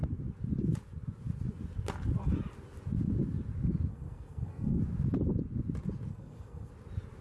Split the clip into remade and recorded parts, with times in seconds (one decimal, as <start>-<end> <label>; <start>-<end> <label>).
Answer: 0.0-3.9 recorded; 3.9-4.8 remade; 4.8-6.1 recorded; 6.1-6.7 remade; 6.7-7.2 recorded